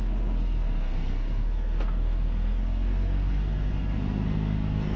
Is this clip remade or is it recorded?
remade